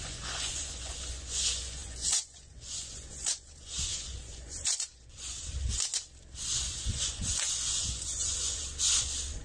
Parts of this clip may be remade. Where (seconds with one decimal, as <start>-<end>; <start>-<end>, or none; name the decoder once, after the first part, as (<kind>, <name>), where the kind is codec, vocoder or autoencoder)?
0.0-5.4 (vocoder, Vocos); 6.4-8.6